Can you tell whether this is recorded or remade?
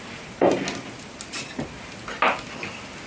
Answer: recorded